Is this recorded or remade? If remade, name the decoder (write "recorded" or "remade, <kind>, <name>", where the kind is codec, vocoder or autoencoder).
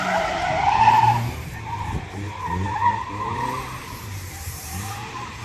remade, vocoder, BigVGAN v2